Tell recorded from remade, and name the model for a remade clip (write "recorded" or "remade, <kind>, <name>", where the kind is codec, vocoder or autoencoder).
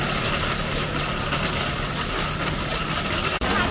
recorded